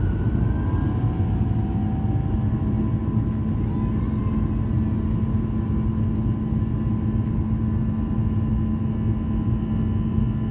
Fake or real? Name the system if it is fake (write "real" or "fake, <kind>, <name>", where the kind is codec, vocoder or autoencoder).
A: real